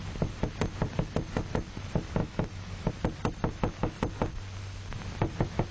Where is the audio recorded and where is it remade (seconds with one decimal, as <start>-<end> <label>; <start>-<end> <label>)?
0.0-2.2 recorded; 2.2-2.9 remade; 2.9-5.7 recorded